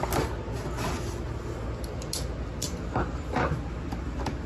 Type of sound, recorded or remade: recorded